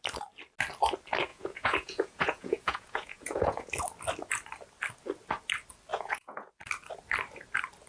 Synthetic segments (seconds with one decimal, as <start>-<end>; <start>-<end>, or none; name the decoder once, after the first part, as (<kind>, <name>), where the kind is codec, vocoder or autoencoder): 1.3-3.7 (vocoder, Vocos); 5.9-6.5